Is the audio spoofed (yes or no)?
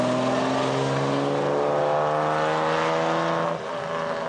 no